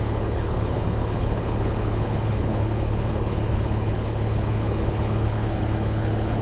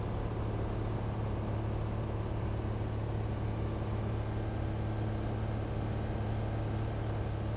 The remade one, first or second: first